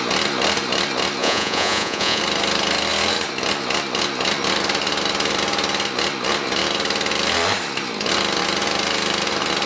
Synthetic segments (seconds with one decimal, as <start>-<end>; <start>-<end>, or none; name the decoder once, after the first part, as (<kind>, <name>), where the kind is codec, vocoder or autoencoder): 1.2-2.2 (vocoder, Vocos)